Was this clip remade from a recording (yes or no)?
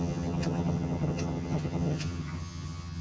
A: yes